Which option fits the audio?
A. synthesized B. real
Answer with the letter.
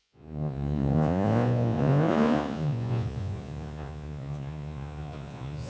A